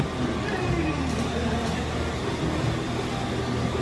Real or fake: real